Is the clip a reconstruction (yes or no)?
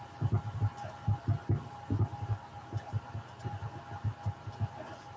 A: no